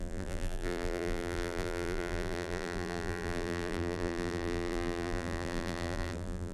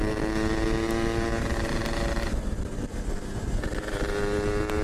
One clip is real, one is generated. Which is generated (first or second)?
first